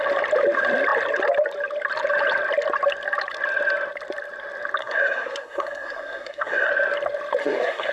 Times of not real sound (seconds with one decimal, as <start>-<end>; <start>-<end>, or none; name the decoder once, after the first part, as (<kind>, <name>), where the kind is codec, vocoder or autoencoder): 4.8-6.7 (codec, SNAC); 7.4-7.9